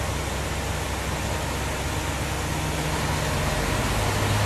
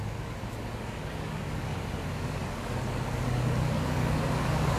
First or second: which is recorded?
first